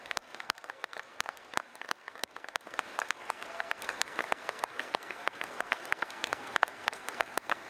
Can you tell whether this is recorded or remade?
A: remade